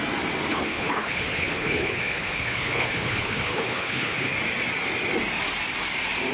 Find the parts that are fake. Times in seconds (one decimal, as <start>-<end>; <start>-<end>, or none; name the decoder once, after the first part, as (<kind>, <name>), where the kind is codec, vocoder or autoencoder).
0.5-4.3 (codec, HILCodec)